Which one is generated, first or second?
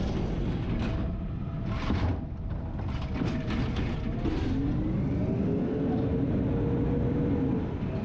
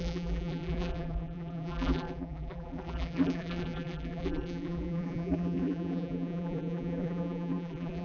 second